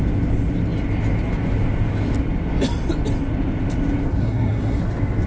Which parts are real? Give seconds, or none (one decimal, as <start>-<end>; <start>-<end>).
0.0-4.2; 4.8-5.3